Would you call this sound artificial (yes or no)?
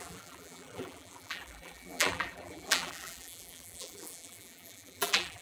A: yes